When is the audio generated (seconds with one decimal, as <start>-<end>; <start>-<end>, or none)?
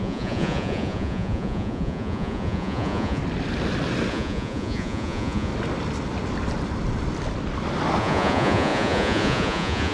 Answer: 0.0-3.2; 4.1-5.5; 8.0-9.9